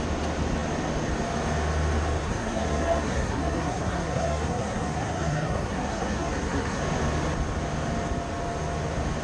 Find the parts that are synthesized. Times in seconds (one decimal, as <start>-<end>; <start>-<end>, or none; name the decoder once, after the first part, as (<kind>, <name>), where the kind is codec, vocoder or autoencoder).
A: 2.2-6.8 (codec, SNAC)